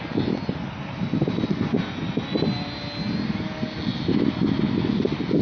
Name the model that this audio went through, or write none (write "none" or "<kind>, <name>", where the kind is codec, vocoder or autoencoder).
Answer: none